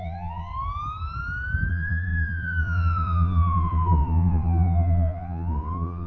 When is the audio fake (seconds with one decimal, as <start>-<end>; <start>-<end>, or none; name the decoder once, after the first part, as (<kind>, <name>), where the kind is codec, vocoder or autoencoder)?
0.0-0.5 (vocoder, Vocos); 1.7-6.1